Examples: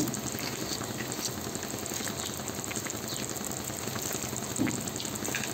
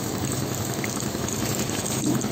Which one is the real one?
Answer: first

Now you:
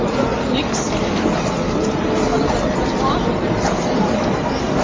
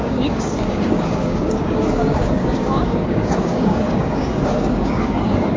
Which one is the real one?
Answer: first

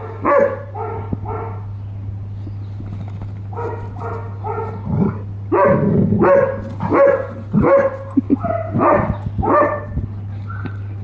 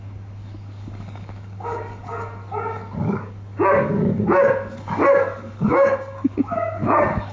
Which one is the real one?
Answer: first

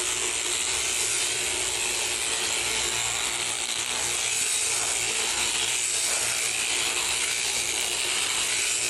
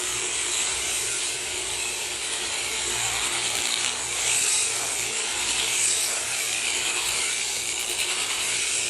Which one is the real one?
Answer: first